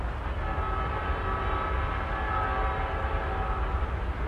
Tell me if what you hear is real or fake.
real